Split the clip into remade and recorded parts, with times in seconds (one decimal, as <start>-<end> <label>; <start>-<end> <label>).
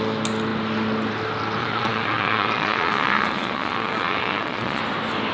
0.0-1.6 recorded; 1.6-4.8 remade; 4.8-5.3 recorded